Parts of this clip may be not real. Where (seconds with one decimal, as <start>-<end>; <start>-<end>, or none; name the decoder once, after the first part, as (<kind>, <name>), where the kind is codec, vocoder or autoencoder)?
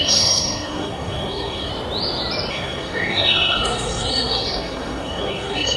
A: 0.0-1.7 (codec, SNAC); 2.5-5.8